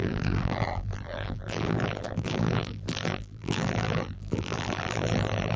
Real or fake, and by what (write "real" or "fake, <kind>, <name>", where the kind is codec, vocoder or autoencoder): fake, vocoder, BigVGAN v2